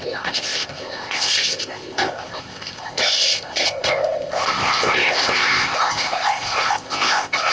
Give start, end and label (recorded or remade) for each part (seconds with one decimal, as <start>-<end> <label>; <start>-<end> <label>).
0.0-7.5 remade